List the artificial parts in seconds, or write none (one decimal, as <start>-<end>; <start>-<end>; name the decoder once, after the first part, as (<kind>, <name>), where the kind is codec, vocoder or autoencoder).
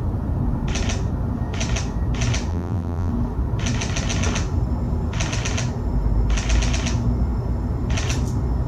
2.5-3.1 (vocoder, BigVGAN v2)